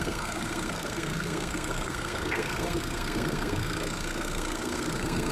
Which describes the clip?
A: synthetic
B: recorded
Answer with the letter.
A